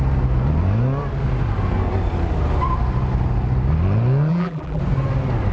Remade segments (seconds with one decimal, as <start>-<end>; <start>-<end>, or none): 4.3-4.8

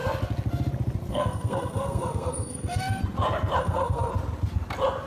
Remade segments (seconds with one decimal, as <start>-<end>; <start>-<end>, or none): 1.1-3.0; 3.6-4.1

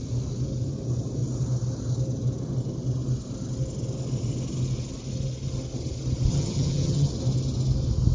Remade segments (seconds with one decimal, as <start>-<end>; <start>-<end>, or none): 6.3-7.1

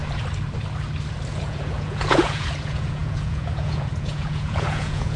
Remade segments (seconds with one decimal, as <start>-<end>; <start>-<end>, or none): 1.3-5.2

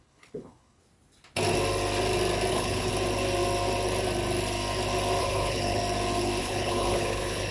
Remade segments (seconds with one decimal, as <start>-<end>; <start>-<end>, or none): 0.0-0.8; 2.5-2.9; 5.2-5.8; 6.4-7.5